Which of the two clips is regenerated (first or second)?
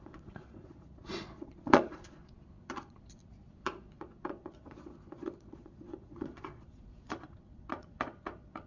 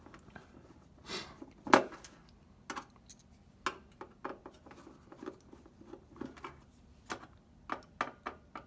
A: first